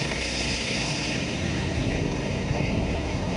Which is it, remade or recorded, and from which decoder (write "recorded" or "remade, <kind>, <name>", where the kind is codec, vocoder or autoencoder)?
remade, codec, SNAC